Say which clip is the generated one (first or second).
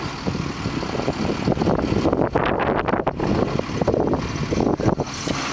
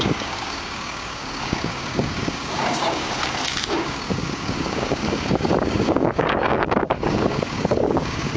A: second